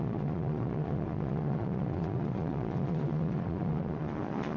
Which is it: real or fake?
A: fake